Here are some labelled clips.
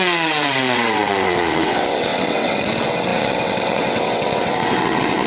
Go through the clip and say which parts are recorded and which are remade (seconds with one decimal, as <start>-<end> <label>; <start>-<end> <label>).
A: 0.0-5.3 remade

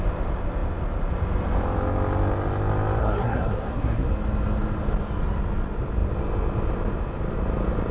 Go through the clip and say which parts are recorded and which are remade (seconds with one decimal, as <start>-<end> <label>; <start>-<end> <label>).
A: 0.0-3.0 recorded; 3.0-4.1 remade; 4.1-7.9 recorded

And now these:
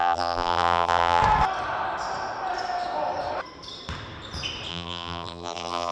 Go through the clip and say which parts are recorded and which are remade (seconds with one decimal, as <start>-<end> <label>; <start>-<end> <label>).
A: 0.0-1.2 remade; 1.2-4.7 recorded; 4.7-5.9 remade

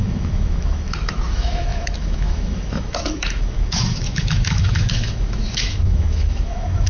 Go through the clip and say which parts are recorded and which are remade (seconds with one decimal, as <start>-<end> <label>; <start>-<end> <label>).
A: 0.0-6.9 remade